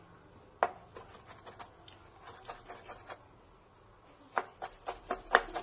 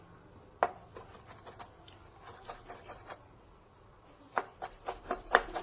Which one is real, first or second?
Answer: first